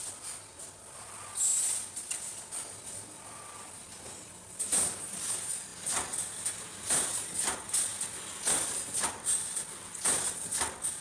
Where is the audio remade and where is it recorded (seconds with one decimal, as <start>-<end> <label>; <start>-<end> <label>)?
0.0-11.0 recorded